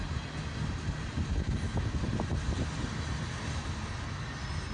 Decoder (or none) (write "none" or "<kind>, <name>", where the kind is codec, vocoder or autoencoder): none